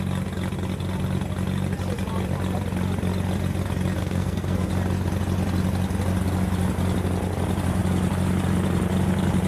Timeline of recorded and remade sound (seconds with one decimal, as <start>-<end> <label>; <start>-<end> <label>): 0.0-4.0 recorded; 4.0-4.7 remade; 4.7-9.5 recorded